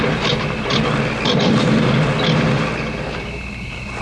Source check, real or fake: real